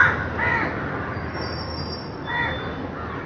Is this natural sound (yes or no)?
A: yes